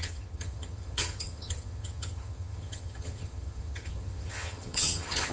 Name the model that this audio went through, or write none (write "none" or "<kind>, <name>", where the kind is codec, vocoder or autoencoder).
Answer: vocoder, HiFi-GAN